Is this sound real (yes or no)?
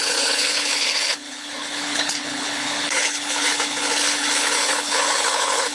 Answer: no